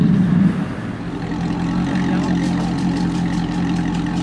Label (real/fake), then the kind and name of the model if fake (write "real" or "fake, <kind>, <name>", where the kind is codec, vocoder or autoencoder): real